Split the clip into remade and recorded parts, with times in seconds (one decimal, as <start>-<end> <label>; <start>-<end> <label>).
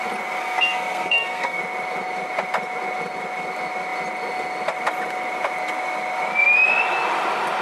0.0-0.4 recorded; 0.4-1.6 remade; 1.6-7.6 recorded